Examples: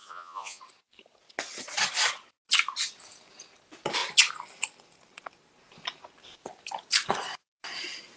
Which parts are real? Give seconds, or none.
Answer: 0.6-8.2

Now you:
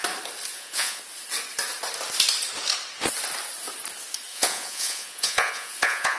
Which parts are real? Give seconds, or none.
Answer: 0.0-0.5; 1.0-4.3

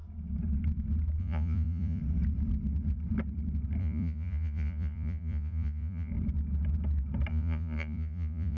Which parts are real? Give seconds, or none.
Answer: 0.0-1.2; 2.0-3.8; 6.1-7.3

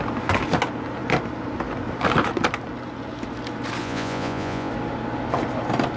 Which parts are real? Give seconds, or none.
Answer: 0.0-3.8; 4.7-6.0

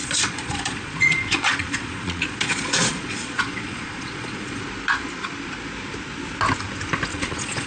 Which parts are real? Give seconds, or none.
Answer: 4.6-7.1